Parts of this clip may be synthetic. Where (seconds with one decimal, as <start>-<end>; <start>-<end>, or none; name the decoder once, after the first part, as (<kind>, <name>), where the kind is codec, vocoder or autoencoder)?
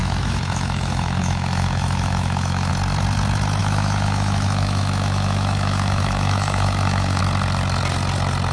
0.0-2.7 (autoencoder, DAC-VAE); 3.6-7.2